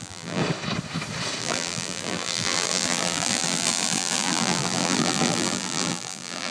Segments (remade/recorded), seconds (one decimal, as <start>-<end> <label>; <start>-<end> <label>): 0.0-0.4 remade; 0.4-1.4 recorded; 1.4-6.5 remade